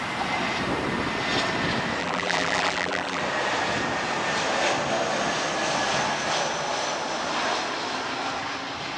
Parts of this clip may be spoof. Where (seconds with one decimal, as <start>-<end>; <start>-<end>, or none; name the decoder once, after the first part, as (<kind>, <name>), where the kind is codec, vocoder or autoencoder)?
2.0-3.2 (vocoder, BigVGAN v2)